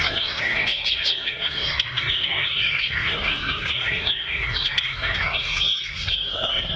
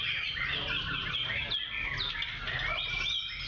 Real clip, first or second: second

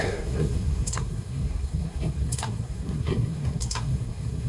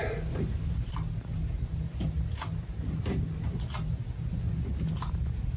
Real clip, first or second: second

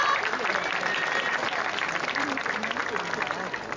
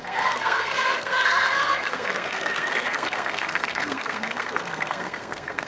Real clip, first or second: first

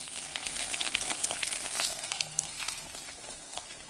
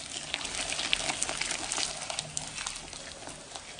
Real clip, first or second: second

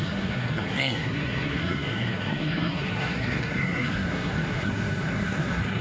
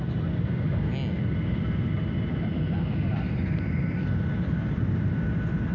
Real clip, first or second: second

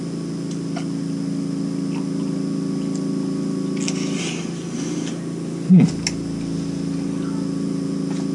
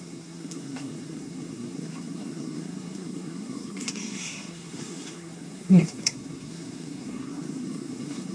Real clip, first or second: first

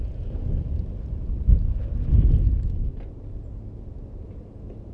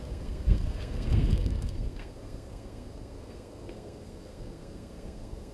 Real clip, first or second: first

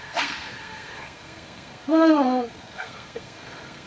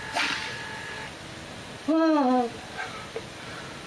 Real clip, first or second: second